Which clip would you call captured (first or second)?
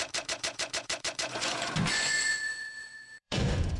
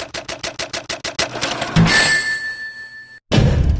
second